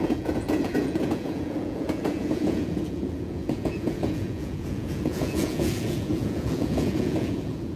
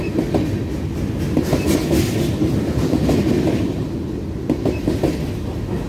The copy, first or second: first